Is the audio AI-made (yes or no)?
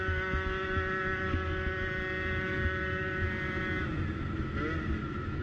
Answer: no